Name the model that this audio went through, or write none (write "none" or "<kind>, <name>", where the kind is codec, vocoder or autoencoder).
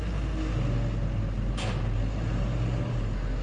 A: none